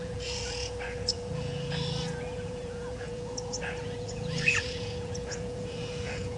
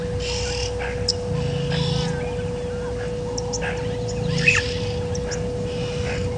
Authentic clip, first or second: second